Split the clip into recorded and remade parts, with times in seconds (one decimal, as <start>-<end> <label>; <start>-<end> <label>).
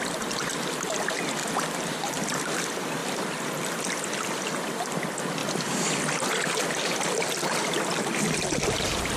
0.0-1.4 recorded; 1.4-2.0 remade; 2.0-3.0 recorded; 3.0-4.5 remade; 4.5-5.4 recorded; 5.4-7.6 remade; 7.6-9.2 recorded